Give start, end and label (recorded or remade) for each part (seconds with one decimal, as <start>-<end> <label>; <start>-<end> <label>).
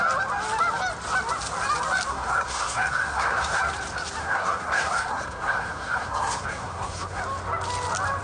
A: 0.0-2.1 recorded; 2.1-3.6 remade; 3.6-4.2 recorded; 4.2-7.2 remade; 7.2-8.2 recorded